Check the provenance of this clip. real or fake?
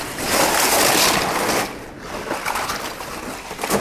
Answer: real